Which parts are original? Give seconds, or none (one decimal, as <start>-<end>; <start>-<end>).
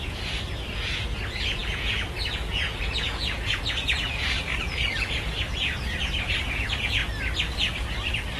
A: 7.0-8.4